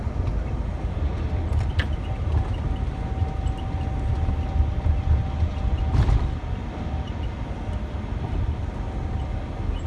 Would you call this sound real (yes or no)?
yes